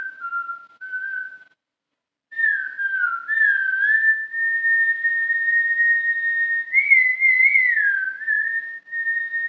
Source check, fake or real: real